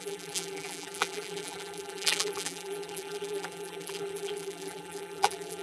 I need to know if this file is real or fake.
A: fake